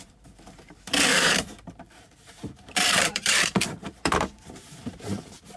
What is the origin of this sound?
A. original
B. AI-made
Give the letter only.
B